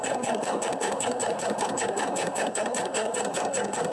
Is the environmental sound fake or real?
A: fake